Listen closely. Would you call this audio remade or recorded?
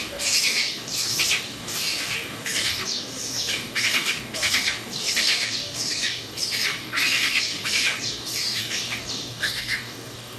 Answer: remade